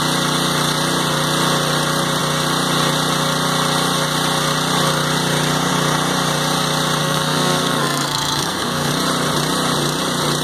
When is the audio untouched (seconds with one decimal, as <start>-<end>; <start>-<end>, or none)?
0.0-7.0; 8.9-10.4